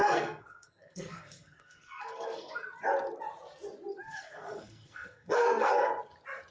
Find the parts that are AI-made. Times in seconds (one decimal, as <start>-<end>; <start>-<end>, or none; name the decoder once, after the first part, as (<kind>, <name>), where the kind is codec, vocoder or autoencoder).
0.0-2.5 (codec, SNAC); 3.9-5.9